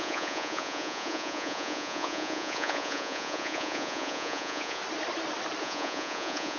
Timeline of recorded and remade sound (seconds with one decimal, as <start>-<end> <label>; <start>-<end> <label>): 0.0-4.8 remade; 4.8-5.6 recorded; 5.6-6.6 remade